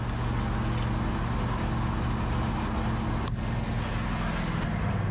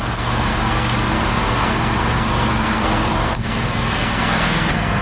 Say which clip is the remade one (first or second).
second